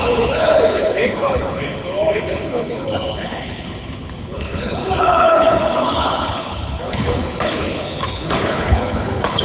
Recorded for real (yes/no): no